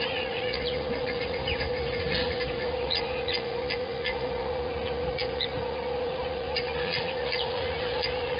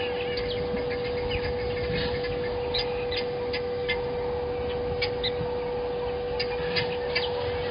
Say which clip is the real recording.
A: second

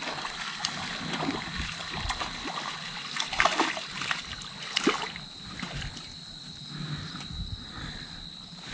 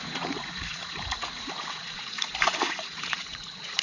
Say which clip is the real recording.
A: first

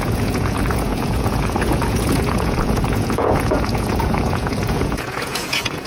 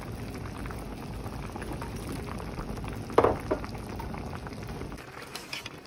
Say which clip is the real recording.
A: second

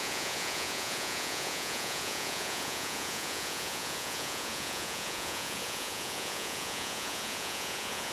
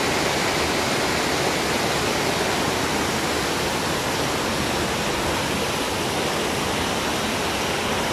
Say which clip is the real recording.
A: second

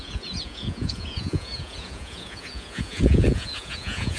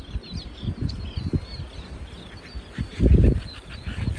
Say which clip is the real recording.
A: second